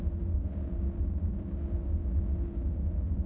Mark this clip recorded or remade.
recorded